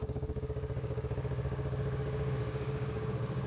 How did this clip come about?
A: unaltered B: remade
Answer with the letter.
B